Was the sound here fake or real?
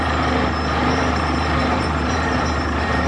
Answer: fake